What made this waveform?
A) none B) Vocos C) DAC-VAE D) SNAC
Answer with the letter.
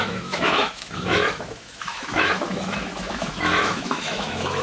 C